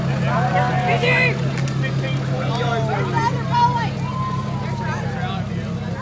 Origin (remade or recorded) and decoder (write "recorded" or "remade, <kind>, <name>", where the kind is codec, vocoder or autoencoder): recorded